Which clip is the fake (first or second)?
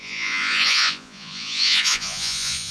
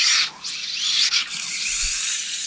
first